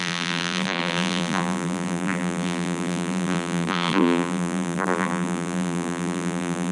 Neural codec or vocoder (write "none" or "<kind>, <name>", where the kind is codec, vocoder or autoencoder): vocoder, BigVGAN v2